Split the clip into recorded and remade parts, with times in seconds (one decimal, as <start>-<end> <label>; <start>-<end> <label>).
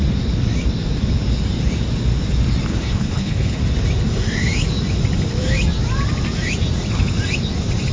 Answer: 0.0-2.7 recorded; 2.7-3.6 remade; 3.6-7.9 recorded